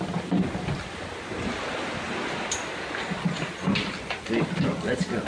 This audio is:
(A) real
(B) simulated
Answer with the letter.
A